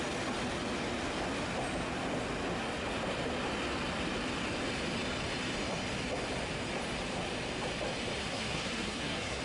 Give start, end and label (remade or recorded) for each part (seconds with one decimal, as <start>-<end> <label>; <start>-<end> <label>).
0.0-8.2 recorded; 8.2-9.4 remade